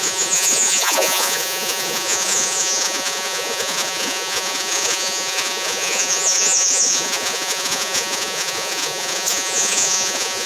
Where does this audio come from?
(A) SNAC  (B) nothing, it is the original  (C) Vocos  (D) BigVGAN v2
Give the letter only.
C